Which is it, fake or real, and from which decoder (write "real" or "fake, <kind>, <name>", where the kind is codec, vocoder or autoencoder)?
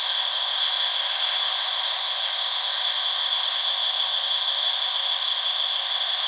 fake, codec, ZipCodec